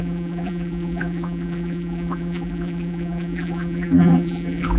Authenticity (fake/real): fake